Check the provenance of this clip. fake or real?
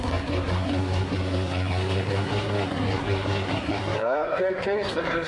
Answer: fake